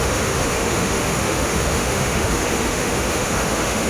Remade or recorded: remade